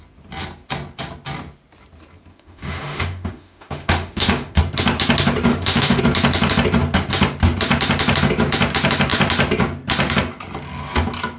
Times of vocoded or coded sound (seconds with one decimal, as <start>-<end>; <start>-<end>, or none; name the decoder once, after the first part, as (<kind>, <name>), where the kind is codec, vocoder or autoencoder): 2.3-4.6 (autoencoder, DAC-VAE); 5.5-6.0